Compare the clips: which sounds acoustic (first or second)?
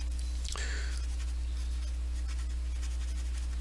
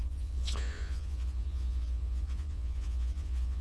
first